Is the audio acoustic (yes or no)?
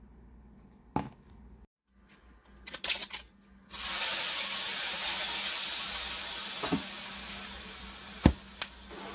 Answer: yes